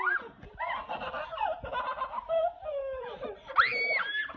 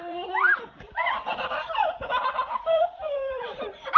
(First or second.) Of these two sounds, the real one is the first